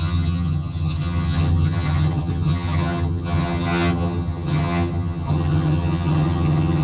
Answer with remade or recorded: remade